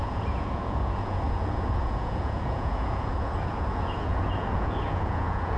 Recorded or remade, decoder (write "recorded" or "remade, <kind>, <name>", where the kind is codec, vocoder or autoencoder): remade, vocoder, Vocos